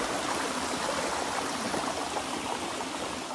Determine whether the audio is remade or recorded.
recorded